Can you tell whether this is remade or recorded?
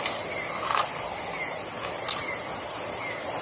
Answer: remade